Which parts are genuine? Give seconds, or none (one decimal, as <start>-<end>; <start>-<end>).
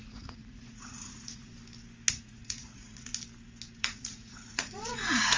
1.5-2.1; 3.1-3.8